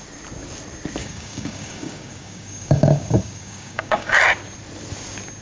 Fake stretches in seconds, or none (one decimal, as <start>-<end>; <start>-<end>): 1.0-4.2